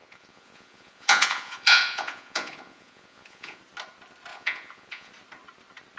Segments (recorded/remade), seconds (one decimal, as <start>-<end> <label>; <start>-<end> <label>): 0.0-3.6 remade; 3.6-4.3 recorded; 4.3-5.1 remade; 5.1-6.0 recorded

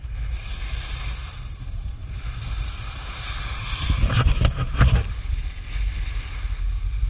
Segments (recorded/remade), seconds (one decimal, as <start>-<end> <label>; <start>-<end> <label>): 0.0-7.1 recorded

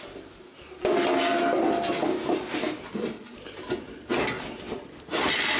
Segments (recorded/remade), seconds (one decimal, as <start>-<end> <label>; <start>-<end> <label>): 0.0-5.6 recorded

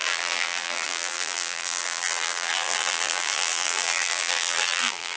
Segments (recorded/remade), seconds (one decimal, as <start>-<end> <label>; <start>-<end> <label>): 0.0-5.2 remade

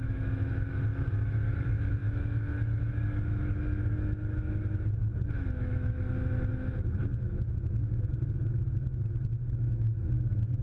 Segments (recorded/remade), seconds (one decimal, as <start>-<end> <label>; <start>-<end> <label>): 0.0-10.6 remade